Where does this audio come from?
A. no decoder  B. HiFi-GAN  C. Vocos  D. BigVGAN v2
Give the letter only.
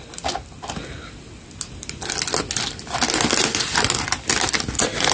A